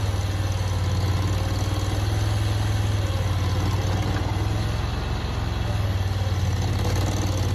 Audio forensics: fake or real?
real